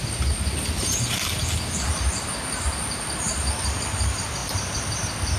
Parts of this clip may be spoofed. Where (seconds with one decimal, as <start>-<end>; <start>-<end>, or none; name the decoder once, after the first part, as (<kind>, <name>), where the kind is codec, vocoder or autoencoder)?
none